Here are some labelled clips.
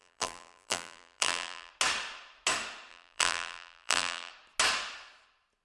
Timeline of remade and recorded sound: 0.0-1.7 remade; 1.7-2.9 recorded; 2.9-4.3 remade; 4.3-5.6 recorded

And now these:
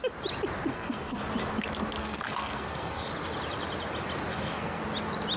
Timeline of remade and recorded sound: 0.0-0.7 recorded; 0.7-1.2 remade; 1.2-2.0 recorded; 2.0-3.1 remade; 3.1-4.3 recorded; 4.3-4.8 remade; 4.8-5.4 recorded

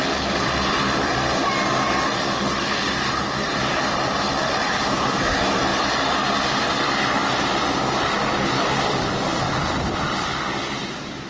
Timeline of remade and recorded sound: 0.0-2.5 remade; 2.5-3.2 recorded; 3.2-5.7 remade; 5.7-6.6 recorded; 6.6-7.2 remade; 7.2-8.9 recorded; 8.9-11.3 remade

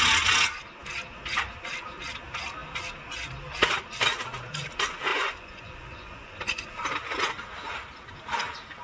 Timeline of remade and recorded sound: 0.0-5.1 recorded; 5.1-6.7 remade; 6.7-8.8 recorded